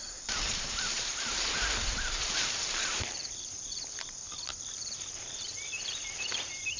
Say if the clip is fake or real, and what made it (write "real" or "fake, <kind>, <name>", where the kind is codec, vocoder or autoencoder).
fake, vocoder, BigVGAN v2